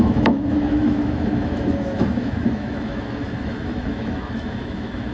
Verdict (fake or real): fake